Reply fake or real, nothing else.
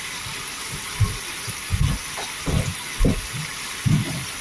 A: real